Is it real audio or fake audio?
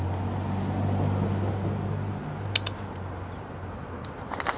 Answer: real